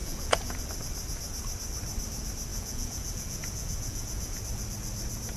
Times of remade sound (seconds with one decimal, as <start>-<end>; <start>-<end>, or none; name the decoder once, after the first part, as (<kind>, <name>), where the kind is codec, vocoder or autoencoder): 0.0-0.6 (vocoder, Vocos); 2.5-4.4